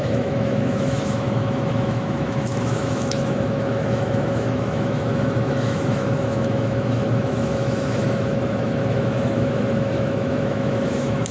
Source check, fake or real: fake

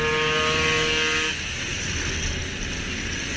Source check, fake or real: real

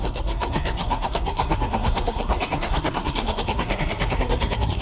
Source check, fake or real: fake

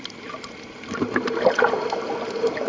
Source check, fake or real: real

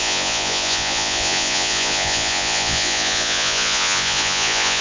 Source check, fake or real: fake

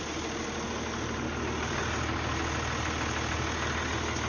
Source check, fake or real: real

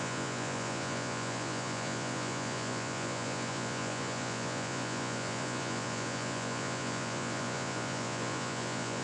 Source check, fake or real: fake